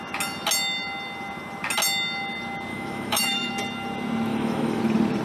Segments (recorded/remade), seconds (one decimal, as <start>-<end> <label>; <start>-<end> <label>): 0.0-2.7 recorded; 2.7-3.5 remade; 3.5-4.3 recorded; 4.3-4.8 remade; 4.8-5.2 recorded